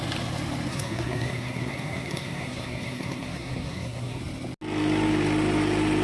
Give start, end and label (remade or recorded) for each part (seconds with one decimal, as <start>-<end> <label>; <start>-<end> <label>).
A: 0.0-0.7 recorded; 0.7-4.2 remade; 4.2-6.0 recorded